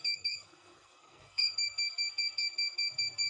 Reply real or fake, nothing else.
fake